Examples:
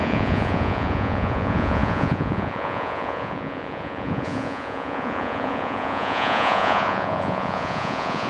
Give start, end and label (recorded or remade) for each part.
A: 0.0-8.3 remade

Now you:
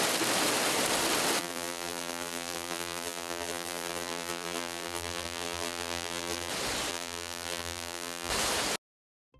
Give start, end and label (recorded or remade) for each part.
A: 0.0-1.4 recorded; 1.4-6.5 remade; 6.5-6.9 recorded; 6.9-8.3 remade; 8.3-9.4 recorded

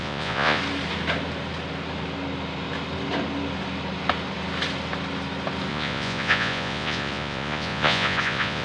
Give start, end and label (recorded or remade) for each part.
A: 0.0-0.6 remade; 0.6-5.7 recorded; 5.7-8.6 remade

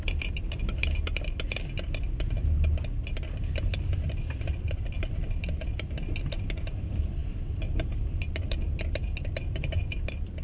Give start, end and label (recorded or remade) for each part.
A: 0.0-10.4 recorded